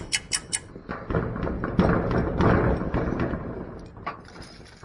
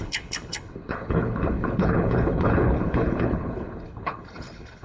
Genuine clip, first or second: first